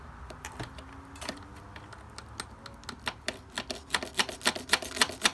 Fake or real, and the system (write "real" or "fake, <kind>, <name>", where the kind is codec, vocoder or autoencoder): real